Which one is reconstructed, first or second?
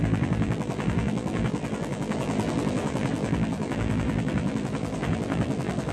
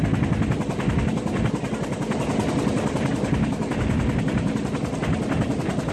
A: first